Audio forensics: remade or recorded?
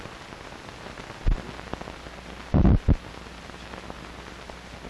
recorded